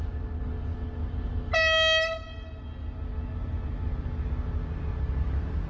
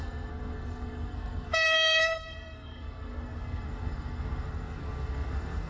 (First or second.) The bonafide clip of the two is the first